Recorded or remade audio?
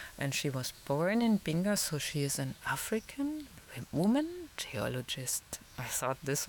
remade